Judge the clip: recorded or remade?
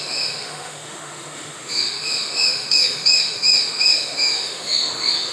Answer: remade